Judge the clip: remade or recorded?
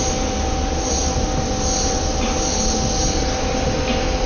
recorded